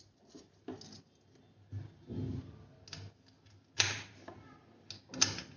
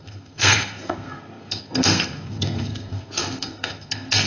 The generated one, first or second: second